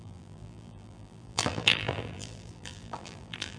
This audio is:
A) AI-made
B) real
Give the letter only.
A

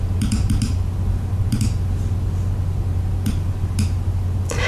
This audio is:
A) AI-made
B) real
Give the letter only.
B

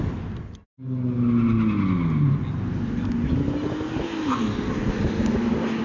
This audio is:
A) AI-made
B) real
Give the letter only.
B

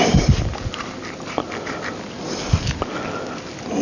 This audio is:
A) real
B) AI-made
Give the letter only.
A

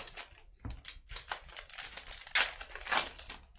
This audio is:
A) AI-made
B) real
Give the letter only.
B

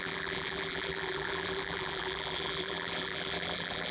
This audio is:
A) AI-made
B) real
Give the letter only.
A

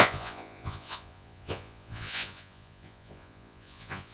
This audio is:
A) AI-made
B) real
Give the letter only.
A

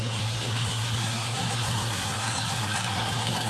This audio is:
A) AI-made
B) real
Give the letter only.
A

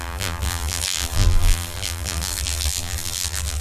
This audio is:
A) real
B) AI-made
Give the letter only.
B